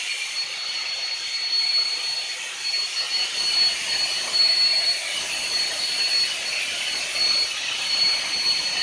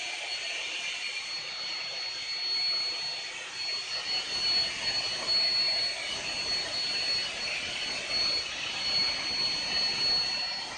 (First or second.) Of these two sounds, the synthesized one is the first